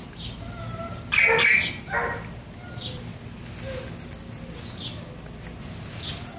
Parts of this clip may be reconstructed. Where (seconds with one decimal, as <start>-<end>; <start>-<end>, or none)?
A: none